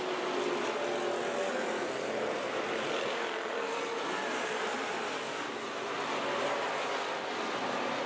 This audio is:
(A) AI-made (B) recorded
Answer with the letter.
B